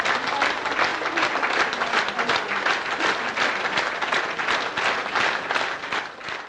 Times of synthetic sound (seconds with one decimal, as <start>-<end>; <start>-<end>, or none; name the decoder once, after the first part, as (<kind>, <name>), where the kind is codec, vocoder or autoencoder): none